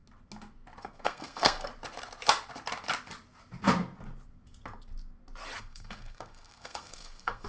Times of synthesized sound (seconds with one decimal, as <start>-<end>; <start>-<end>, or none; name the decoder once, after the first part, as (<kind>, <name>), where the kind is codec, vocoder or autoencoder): 0.8-1.7 (codec, SNAC); 5.6-7.5